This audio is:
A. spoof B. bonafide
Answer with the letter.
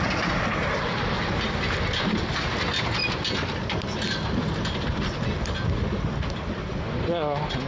B